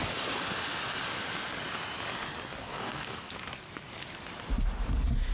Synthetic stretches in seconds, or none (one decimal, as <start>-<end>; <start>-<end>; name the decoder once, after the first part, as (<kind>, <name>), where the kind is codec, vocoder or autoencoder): 2.6-3.3 (codec, DAC)